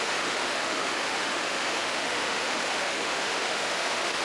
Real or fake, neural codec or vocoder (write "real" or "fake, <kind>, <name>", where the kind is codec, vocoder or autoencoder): fake, autoencoder, DAC-VAE